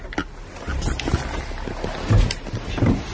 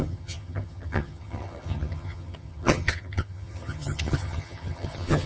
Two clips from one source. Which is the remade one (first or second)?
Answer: second